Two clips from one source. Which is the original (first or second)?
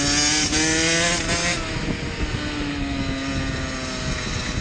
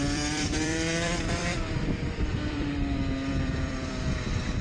first